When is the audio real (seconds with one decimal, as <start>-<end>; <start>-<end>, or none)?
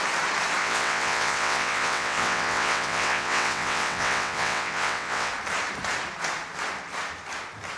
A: 0.0-0.6; 5.3-7.8